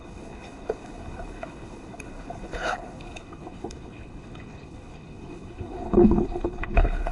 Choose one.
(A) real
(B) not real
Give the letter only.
B